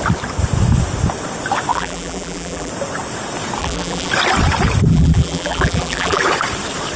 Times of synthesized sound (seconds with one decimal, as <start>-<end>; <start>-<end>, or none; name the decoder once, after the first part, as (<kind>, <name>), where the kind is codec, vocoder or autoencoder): 1.7-2.7 (vocoder, BigVGAN v2); 3.6-4.1; 4.9-6.2